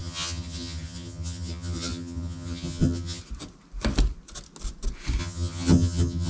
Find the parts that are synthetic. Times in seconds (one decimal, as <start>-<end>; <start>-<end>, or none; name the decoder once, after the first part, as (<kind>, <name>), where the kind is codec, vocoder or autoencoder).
0.0-3.2 (vocoder, HiFi-GAN); 5.2-6.3

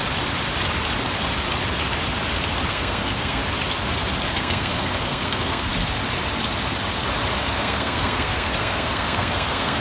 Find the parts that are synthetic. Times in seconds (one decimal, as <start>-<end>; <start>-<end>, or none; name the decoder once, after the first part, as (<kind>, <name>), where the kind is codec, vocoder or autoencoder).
2.7-3.4 (codec, SNAC); 4.3-5.7; 7.4-9.8

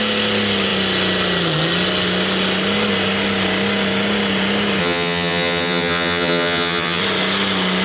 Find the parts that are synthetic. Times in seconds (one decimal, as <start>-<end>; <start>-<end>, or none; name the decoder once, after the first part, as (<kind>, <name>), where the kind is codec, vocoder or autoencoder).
4.8-7.0 (vocoder, HiFi-GAN)